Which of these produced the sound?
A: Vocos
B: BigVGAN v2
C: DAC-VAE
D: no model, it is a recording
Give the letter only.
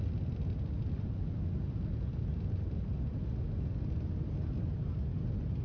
D